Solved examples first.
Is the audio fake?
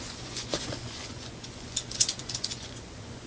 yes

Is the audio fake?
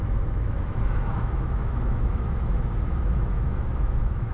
yes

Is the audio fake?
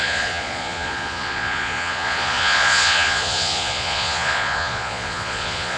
yes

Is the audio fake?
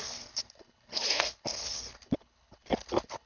yes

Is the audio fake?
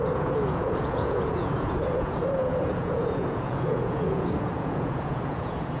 yes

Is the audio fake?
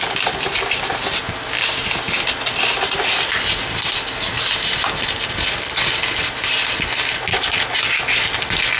no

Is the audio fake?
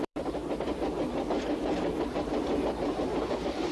yes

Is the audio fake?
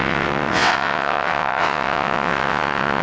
yes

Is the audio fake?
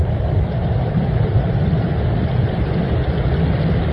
no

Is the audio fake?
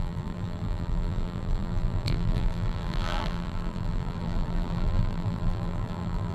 yes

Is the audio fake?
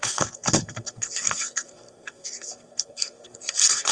yes